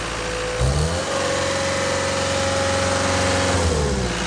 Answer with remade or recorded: recorded